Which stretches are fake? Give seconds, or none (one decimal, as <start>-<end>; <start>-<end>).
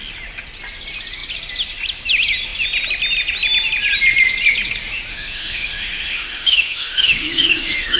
5.1-8.0